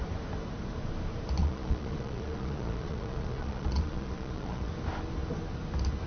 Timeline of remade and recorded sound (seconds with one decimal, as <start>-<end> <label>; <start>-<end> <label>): 0.0-1.4 recorded; 1.4-4.7 remade; 4.7-6.1 recorded